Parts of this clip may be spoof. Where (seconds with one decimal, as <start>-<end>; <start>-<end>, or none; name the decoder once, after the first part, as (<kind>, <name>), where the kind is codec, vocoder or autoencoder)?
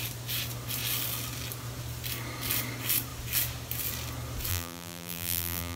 4.5-5.8 (vocoder, BigVGAN v2)